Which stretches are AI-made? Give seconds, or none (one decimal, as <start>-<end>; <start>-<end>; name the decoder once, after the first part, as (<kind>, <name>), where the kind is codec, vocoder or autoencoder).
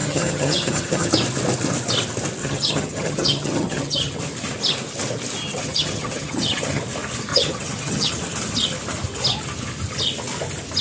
0.0-1.1 (vocoder, HiFi-GAN); 2.4-4.2; 5.4-6.8; 7.3-8.1